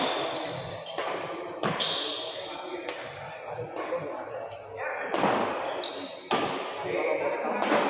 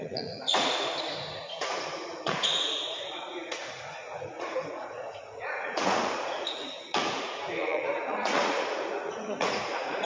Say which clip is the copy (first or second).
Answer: second